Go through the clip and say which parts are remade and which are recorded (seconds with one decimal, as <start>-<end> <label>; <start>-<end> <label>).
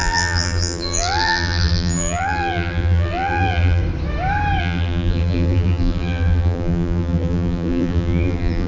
0.0-3.8 remade; 3.8-4.6 recorded; 4.6-8.7 remade